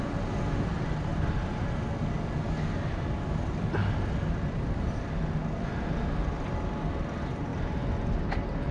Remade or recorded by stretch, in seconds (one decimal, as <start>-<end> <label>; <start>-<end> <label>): 0.0-8.7 recorded